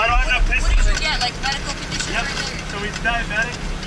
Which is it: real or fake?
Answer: real